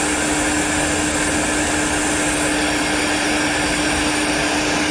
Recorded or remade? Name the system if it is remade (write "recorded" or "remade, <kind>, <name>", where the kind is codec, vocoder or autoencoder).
recorded